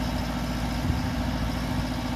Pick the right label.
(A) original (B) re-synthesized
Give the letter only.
A